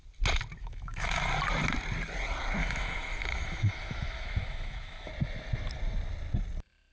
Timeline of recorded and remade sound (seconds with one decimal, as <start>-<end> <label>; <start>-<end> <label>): 0.0-0.6 recorded; 0.6-1.2 remade; 1.2-2.6 recorded; 2.6-5.1 remade; 5.1-6.9 recorded